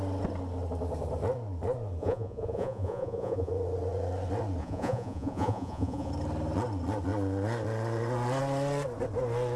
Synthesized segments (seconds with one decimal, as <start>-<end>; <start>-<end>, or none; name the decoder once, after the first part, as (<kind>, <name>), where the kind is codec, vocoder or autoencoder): 2.0-3.5 (vocoder, Vocos); 4.6-6.1